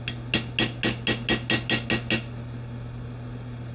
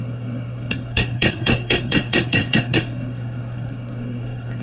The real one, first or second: first